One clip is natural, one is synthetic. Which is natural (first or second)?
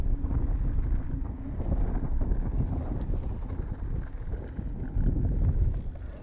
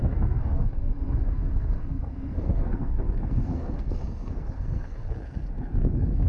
first